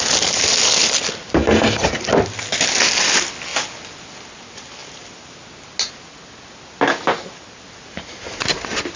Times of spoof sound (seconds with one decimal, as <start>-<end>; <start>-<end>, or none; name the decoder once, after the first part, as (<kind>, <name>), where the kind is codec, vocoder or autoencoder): none